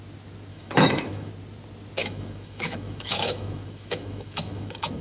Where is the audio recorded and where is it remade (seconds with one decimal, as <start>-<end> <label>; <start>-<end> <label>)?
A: 0.0-0.5 recorded; 0.5-1.3 remade; 1.3-2.0 recorded; 2.0-5.0 remade